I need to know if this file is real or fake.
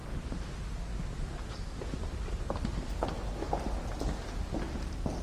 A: real